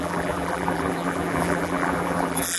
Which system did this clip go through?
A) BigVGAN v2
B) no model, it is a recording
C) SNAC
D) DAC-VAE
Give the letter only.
A